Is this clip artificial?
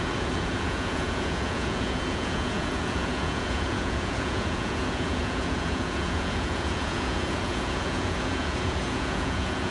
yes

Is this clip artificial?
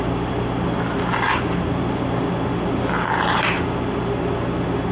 no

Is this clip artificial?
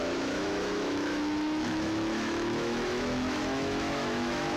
yes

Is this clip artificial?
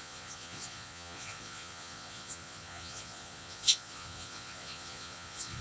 yes